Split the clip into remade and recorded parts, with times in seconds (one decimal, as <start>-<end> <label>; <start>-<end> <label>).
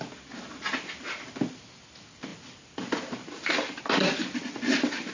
0.0-5.1 recorded